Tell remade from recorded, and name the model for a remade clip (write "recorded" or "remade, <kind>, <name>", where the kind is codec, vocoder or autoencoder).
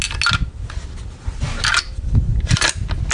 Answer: recorded